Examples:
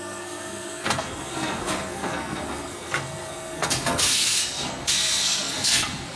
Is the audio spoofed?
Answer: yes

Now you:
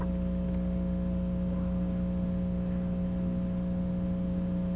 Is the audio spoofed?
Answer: no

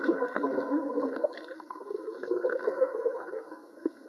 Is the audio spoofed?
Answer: yes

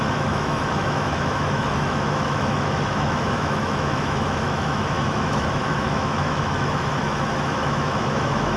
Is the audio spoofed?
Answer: yes